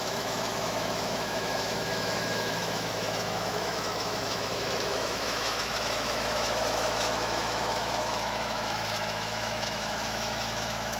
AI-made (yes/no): yes